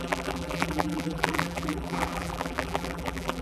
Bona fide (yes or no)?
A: no